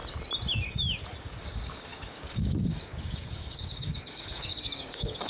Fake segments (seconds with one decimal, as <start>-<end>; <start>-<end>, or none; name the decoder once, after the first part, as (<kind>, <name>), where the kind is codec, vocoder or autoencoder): 1.2-5.3 (codec, DAC)